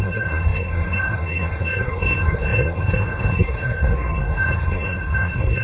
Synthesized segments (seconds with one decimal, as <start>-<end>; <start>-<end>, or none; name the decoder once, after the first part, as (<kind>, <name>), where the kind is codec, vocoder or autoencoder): 0.0-5.6 (codec, SNAC)